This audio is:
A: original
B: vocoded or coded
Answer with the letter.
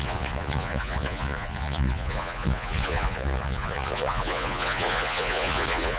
B